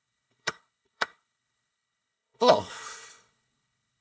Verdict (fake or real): fake